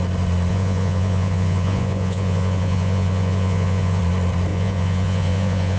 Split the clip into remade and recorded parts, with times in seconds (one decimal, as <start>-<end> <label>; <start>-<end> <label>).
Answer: 0.0-0.5 recorded; 0.5-4.0 remade; 4.0-4.5 recorded; 4.5-5.8 remade